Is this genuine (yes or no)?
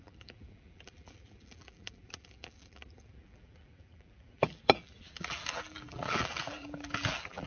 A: no